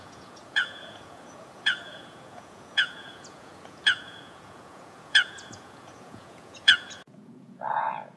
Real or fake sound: fake